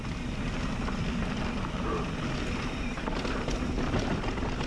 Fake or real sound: real